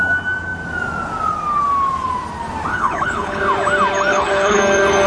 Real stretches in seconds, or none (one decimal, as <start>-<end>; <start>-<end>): 0.0-2.7; 3.4-4.1; 4.6-5.1